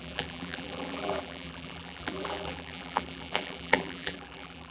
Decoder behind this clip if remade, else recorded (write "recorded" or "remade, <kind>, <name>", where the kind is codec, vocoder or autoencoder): remade, vocoder, BigVGAN v2